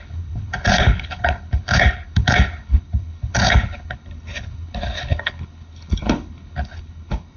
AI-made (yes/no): yes